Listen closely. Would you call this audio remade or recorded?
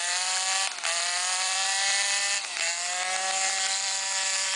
remade